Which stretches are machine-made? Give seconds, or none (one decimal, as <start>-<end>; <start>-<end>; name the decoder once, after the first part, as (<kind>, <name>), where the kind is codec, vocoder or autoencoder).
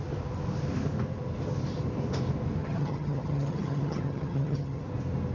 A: 2.6-4.8 (vocoder, HiFi-GAN)